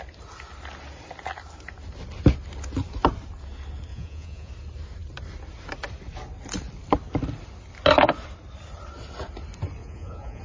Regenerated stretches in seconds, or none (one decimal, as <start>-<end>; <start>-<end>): 3.9-4.5; 9.8-10.4